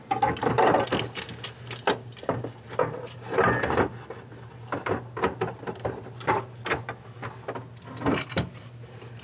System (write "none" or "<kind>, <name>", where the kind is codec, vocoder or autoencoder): none